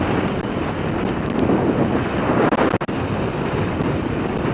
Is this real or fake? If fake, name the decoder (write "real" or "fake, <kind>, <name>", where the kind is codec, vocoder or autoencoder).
fake, vocoder, BigVGAN v2